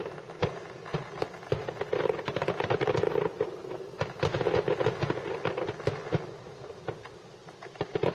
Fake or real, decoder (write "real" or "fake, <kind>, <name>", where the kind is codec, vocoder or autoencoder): real